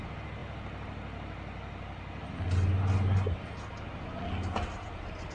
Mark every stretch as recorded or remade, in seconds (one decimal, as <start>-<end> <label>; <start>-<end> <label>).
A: 0.0-5.3 recorded